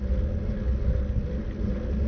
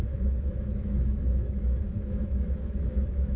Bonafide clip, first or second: first